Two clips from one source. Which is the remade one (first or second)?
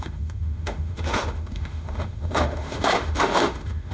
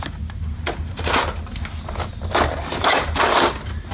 first